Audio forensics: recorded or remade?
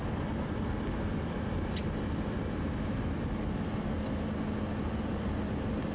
recorded